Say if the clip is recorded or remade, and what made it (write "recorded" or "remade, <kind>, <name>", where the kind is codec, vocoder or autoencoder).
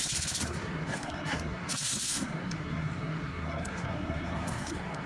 remade, codec, SNAC